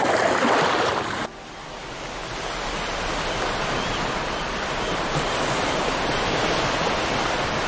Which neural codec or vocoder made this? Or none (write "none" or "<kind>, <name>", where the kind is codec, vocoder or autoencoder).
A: none